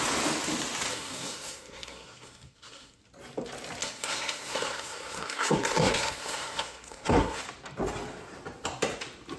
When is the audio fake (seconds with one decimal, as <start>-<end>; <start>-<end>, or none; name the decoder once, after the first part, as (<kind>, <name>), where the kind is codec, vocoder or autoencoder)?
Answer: 0.9-3.0 (codec, SNAC); 3.8-7.4